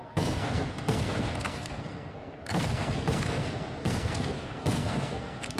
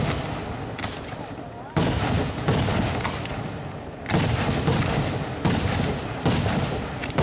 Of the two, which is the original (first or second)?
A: second